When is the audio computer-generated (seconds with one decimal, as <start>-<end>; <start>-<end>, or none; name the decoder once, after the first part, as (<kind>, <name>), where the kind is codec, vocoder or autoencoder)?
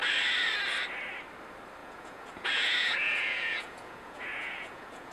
1.8-5.1 (vocoder, Vocos)